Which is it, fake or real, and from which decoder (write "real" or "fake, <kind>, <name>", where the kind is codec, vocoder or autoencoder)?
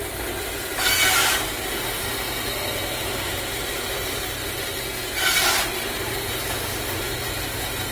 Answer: real